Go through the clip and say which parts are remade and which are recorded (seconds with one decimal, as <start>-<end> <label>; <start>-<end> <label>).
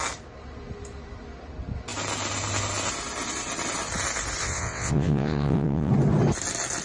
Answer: 0.0-4.4 recorded; 4.4-5.9 remade; 5.9-6.8 recorded